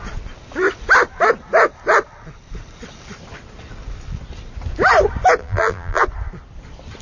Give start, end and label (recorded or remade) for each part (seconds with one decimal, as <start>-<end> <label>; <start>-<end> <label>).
0.0-5.4 recorded; 5.4-6.0 remade; 6.0-7.0 recorded

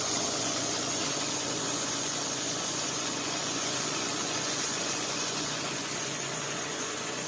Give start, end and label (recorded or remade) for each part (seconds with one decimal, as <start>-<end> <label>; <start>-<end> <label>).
0.0-7.3 remade